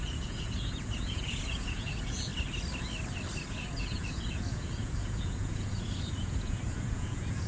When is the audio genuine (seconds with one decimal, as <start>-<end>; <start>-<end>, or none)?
2.3-3.5